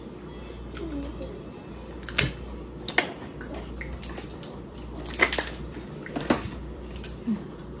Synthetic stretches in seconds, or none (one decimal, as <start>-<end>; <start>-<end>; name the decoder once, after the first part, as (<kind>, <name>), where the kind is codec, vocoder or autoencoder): 4.3-7.8 (vocoder, BigVGAN v2)